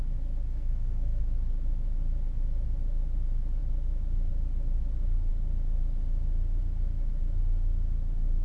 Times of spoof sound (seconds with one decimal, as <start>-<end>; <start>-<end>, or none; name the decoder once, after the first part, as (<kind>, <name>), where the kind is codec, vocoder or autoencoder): 0.5-1.2 (codec, SNAC)